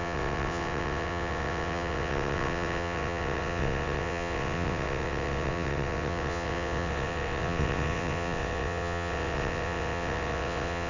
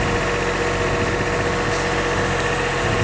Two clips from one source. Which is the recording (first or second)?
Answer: second